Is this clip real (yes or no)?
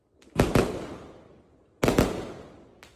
yes